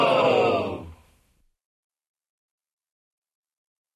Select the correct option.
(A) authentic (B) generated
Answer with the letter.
B